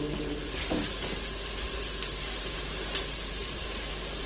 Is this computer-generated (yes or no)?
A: yes